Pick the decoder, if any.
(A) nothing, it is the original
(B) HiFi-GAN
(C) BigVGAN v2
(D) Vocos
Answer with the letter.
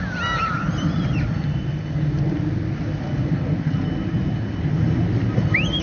A